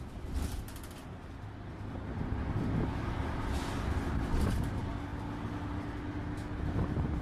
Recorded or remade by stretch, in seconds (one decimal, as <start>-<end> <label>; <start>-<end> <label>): 0.0-1.0 recorded; 1.0-1.5 remade; 1.5-7.2 recorded